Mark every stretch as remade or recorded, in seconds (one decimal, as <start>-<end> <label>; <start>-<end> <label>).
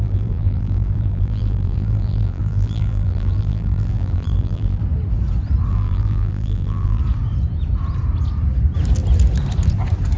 0.0-4.8 remade; 4.8-5.7 recorded; 5.7-7.0 remade; 7.0-10.2 recorded